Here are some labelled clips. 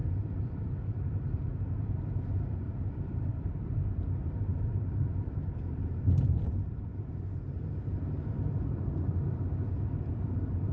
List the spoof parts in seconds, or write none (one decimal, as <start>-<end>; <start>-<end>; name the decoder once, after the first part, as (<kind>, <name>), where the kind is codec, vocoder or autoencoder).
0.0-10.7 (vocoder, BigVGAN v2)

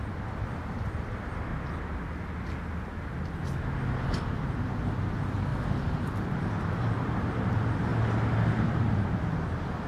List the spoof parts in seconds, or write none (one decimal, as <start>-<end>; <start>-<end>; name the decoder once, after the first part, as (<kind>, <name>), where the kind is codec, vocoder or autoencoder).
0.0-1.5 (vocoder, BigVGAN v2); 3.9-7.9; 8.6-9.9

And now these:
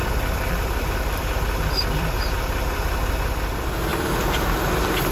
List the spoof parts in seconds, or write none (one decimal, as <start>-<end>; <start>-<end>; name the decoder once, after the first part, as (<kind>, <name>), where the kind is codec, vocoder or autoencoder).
0.0-3.1 (vocoder, BigVGAN v2)

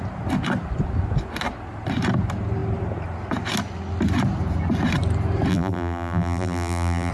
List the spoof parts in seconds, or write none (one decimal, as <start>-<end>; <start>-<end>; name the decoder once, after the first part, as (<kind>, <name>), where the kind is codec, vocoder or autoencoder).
5.5-7.1 (vocoder, BigVGAN v2)

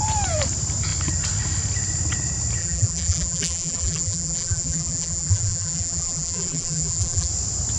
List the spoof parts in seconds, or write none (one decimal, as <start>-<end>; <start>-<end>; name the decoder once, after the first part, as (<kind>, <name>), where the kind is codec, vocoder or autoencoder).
2.6-7.3 (vocoder, BigVGAN v2)